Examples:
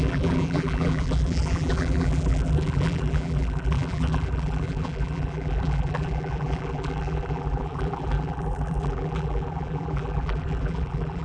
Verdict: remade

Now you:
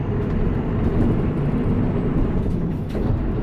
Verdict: remade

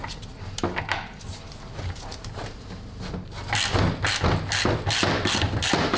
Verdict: recorded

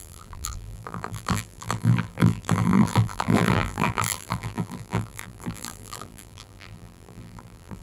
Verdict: remade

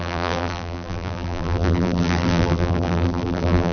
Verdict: remade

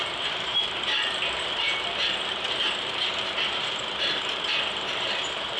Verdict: remade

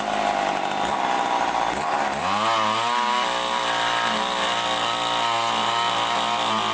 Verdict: recorded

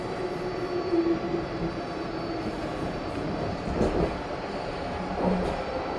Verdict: remade